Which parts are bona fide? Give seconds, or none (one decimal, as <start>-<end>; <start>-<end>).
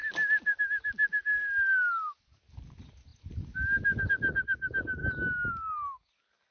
0.0-6.5